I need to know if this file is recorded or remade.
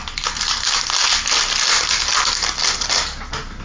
recorded